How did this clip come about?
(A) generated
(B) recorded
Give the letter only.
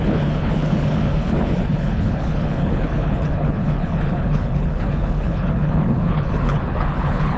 A